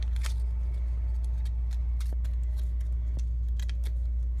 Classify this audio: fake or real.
real